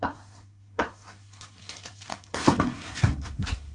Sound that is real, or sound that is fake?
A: fake